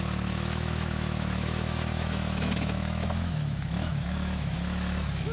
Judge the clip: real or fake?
fake